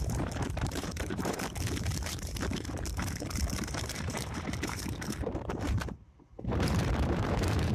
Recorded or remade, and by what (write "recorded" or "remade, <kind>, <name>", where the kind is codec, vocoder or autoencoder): remade, vocoder, BigVGAN v2